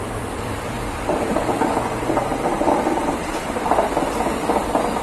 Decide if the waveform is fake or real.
fake